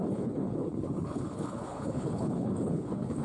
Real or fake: fake